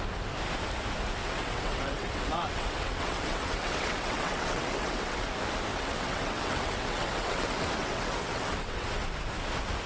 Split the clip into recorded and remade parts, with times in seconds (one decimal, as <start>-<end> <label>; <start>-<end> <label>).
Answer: 0.0-1.2 recorded; 1.2-5.3 remade; 5.3-5.7 recorded; 5.7-8.9 remade; 8.9-9.9 recorded